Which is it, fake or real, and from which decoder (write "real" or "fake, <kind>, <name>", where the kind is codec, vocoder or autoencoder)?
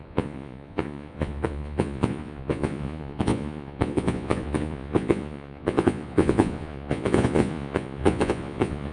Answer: fake, vocoder, Vocos